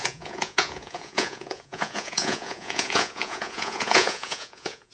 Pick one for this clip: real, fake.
fake